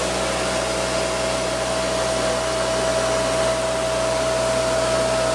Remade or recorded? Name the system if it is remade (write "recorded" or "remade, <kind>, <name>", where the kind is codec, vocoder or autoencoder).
recorded